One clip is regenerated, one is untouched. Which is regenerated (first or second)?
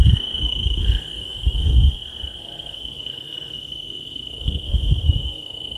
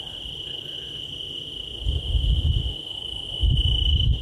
first